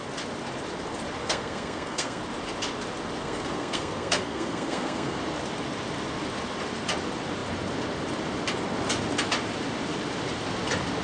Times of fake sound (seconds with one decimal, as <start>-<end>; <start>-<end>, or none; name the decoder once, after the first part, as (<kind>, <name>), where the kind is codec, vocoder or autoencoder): 1.2-2.2 (codec, SNAC); 3.2-5.2